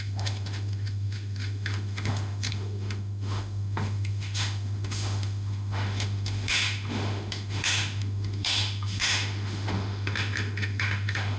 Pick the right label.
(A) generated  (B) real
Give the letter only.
A